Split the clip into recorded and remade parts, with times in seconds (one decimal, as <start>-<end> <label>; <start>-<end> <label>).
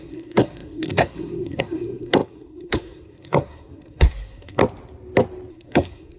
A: 0.0-4.6 remade; 4.6-5.5 recorded; 5.5-6.2 remade